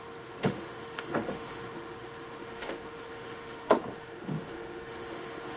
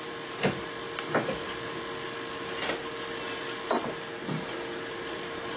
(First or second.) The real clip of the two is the second